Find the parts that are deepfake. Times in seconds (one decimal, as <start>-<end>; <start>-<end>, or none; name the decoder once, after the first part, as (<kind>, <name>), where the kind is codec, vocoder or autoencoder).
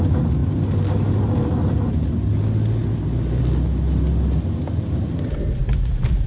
none